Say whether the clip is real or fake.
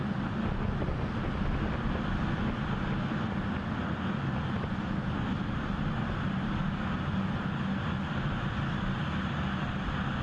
real